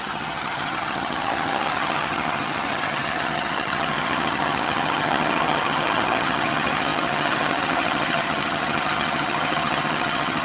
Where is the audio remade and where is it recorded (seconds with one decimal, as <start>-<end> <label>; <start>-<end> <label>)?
0.0-10.4 remade